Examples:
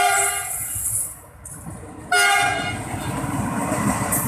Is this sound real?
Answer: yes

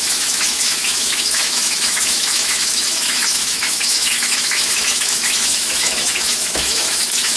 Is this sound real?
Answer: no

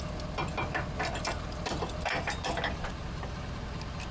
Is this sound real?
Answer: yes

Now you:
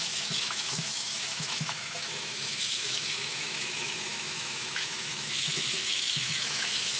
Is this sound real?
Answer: no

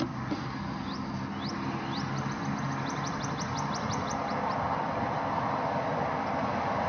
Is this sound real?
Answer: yes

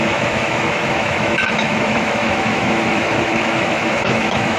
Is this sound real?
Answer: no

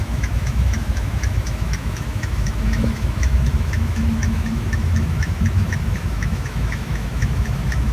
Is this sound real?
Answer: no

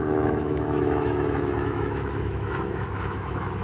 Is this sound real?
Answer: no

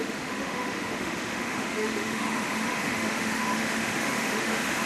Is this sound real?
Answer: no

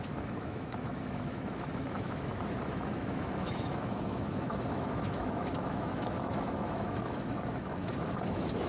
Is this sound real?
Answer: no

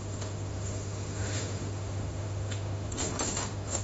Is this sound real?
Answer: no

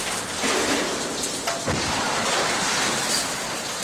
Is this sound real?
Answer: yes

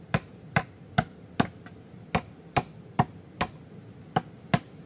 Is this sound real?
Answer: yes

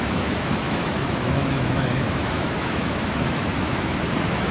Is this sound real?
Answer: no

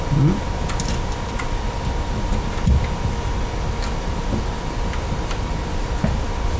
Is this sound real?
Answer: yes